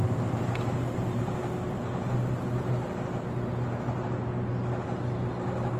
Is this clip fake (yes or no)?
no